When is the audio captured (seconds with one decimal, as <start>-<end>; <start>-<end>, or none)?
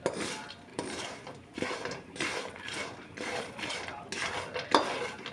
0.0-0.7; 3.9-5.3